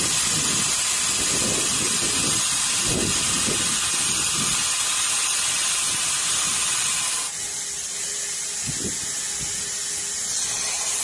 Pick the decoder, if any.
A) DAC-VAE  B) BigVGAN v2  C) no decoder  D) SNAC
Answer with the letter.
C